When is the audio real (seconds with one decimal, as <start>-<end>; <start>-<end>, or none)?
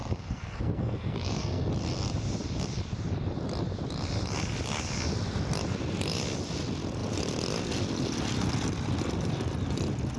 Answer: 1.7-10.2